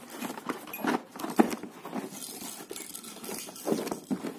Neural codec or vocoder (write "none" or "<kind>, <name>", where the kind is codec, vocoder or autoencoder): none